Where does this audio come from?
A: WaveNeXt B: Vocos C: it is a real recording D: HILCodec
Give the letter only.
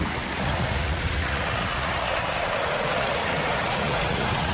B